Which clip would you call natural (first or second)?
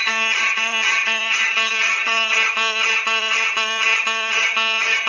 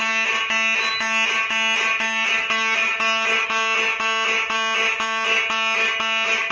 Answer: second